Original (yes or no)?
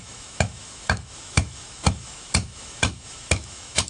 no